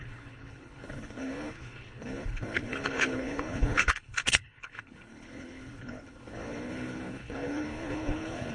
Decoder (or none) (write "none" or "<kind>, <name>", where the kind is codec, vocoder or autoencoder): codec, HILCodec